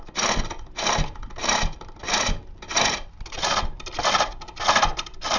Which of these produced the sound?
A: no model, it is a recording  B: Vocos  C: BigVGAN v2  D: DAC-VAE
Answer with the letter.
A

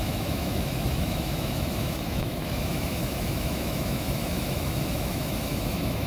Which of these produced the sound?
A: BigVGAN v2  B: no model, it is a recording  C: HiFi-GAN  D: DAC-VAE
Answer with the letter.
D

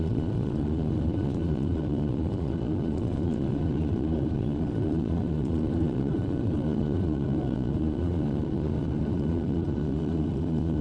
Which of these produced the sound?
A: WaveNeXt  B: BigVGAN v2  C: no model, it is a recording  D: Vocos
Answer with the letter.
D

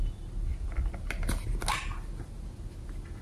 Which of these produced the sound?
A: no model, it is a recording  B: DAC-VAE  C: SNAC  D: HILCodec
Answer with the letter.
A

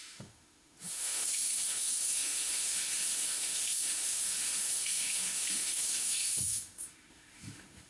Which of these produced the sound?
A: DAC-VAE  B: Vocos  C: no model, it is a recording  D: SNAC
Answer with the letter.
A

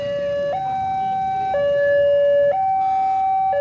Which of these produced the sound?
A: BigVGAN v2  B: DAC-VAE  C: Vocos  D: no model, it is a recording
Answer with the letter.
D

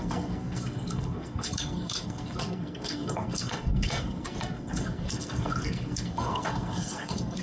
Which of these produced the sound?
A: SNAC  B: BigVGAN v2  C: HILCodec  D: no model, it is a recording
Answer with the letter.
A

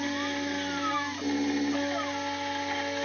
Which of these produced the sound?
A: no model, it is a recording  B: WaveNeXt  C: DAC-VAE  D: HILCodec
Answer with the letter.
A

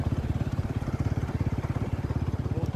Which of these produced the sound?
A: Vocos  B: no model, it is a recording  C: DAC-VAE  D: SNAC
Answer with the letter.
B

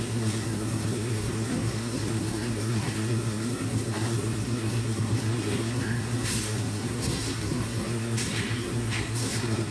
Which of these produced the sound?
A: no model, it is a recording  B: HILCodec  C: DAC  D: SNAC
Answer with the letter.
D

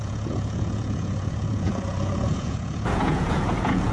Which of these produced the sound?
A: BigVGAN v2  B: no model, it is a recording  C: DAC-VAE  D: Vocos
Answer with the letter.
D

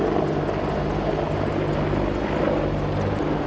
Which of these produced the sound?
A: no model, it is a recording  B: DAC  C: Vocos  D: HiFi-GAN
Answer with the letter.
A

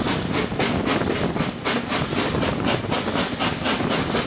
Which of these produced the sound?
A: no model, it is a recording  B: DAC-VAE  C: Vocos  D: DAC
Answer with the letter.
A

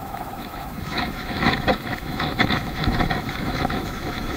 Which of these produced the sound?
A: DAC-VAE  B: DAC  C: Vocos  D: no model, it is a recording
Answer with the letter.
A